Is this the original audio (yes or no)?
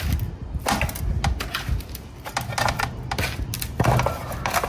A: yes